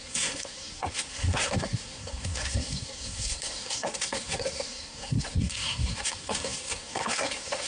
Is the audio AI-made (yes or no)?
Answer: yes